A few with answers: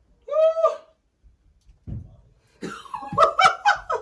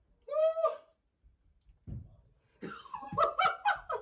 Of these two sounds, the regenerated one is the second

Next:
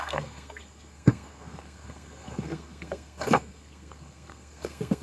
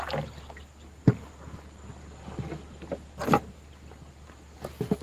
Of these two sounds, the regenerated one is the first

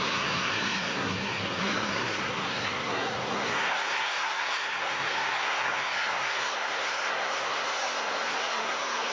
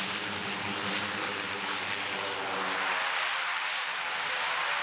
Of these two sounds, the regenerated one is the first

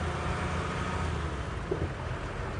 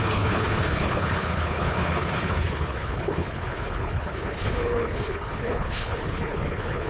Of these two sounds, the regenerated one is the second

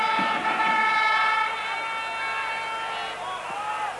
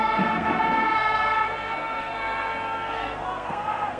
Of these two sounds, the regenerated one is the second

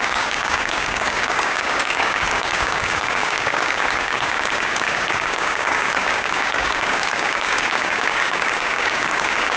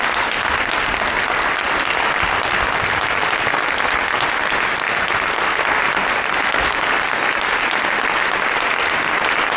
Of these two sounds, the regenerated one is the first